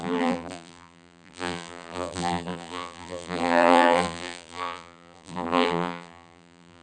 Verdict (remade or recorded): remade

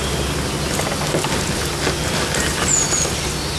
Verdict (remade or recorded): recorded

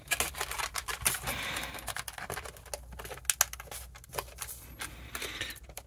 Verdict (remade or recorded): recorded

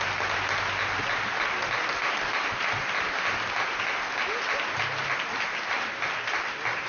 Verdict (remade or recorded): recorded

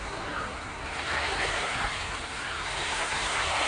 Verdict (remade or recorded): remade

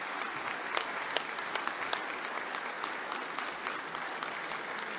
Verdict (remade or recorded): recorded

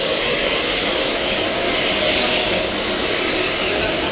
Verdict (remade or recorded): remade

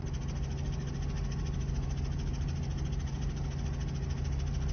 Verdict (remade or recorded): recorded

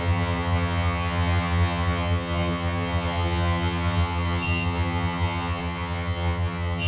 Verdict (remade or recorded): remade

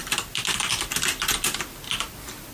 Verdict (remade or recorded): recorded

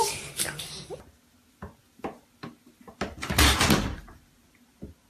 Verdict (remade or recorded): recorded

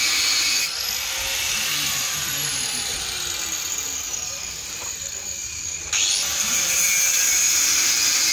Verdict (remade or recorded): recorded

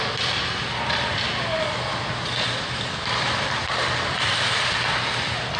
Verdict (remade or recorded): remade